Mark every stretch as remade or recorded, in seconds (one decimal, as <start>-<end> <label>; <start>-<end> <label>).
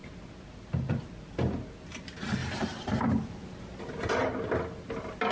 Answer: 0.0-5.3 recorded